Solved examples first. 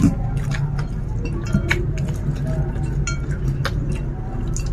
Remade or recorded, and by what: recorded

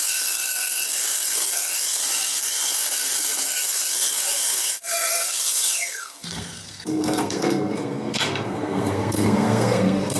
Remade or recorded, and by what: remade, codec, SNAC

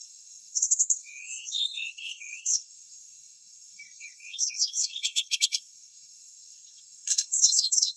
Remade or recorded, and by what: remade, codec, SNAC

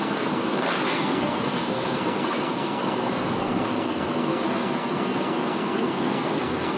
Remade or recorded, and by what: remade, codec, SNAC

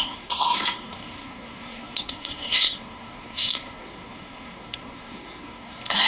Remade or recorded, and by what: remade, codec, SNAC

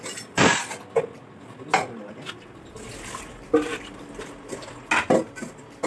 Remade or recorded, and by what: recorded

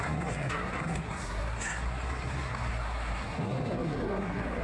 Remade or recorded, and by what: remade, codec, SNAC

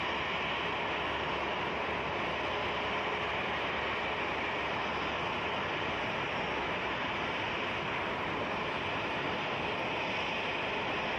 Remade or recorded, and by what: recorded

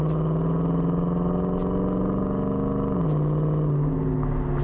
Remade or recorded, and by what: recorded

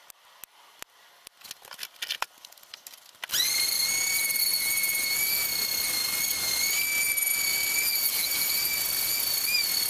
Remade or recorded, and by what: recorded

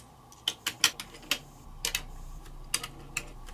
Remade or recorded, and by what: recorded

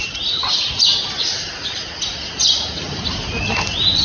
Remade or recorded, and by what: recorded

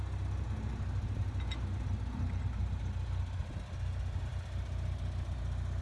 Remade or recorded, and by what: recorded